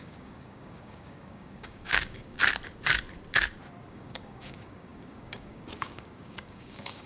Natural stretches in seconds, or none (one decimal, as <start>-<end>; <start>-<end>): 2.4-3.9